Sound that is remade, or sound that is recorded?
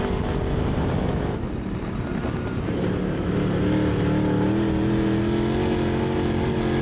recorded